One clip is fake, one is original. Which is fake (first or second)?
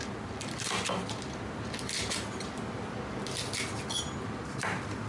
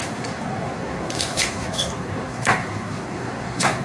second